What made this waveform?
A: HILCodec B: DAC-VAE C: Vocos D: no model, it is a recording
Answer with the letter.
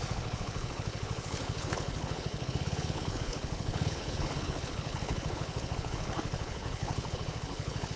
A